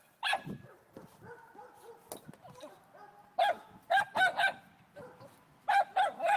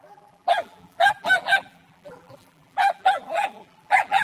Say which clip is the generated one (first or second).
second